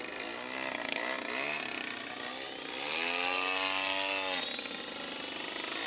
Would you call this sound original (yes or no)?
yes